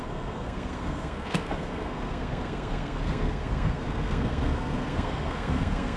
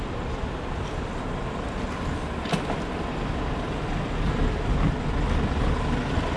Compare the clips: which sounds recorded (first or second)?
second